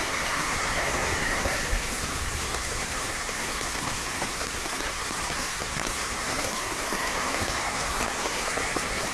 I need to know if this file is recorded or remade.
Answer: remade